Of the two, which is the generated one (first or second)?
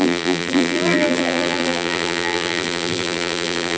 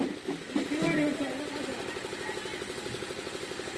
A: first